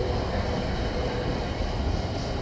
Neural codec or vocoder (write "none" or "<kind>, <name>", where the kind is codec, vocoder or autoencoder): none